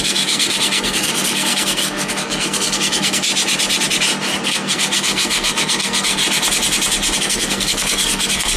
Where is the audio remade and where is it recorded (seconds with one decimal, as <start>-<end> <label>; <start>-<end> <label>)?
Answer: 0.0-3.3 remade; 3.3-4.4 recorded; 4.4-6.2 remade; 6.2-7.2 recorded; 7.2-8.6 remade